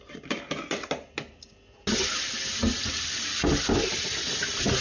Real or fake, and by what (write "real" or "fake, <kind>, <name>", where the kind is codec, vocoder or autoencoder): real